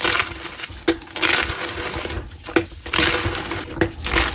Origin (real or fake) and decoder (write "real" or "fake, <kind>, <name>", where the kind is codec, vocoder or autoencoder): real